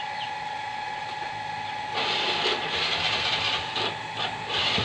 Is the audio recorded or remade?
recorded